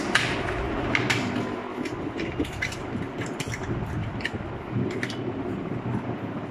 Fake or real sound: real